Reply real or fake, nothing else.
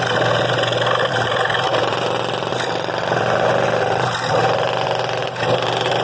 real